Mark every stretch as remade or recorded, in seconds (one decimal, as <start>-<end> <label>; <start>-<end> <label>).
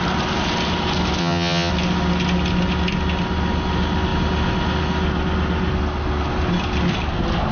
0.0-1.2 recorded; 1.2-1.7 remade; 1.7-7.5 recorded